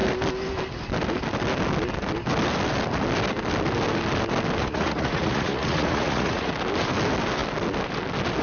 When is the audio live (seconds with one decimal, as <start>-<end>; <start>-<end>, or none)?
0.0-4.6; 6.5-8.4

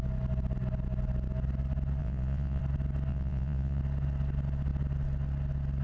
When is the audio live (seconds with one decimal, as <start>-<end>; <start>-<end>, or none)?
0.0-2.0; 2.6-3.1; 3.8-5.8

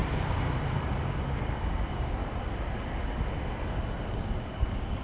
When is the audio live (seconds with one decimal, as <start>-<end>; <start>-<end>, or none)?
0.0-1.0; 2.2-4.1

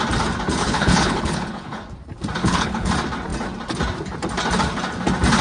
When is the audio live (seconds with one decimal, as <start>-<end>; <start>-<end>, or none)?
0.0-0.6; 1.8-2.4; 2.9-5.4

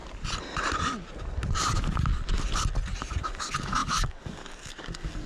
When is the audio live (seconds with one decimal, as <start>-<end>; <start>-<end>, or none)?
0.0-3.2

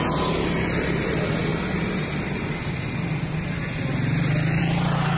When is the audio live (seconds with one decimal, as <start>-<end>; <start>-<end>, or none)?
0.0-5.2